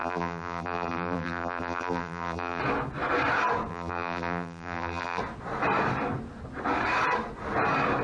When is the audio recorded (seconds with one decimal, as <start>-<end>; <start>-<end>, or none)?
2.6-3.7; 5.2-8.0